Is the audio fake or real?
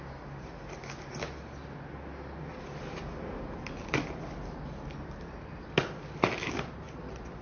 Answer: real